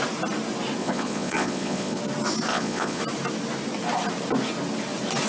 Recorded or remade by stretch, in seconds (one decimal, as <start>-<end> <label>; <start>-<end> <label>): 0.0-0.8 recorded; 0.8-2.0 remade; 2.0-2.5 recorded; 2.5-3.0 remade; 3.0-5.3 recorded